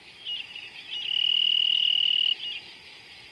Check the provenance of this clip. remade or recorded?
recorded